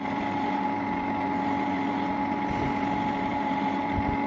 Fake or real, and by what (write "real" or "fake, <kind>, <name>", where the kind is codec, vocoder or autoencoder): real